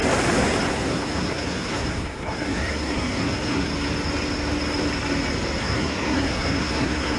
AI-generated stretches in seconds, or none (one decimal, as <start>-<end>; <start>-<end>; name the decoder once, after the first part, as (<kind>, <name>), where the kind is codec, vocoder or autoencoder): 0.7-3.7 (codec, SNAC); 5.6-7.2